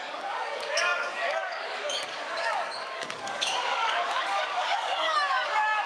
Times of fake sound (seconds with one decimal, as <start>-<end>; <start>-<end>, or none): 0.0-5.9